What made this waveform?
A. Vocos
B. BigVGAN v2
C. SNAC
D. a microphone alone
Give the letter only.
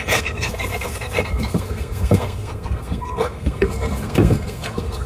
C